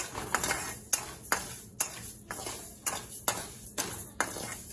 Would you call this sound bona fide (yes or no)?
yes